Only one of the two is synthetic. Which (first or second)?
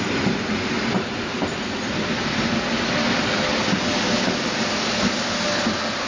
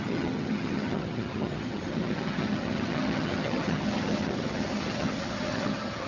second